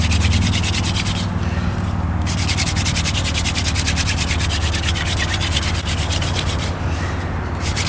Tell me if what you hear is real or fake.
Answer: real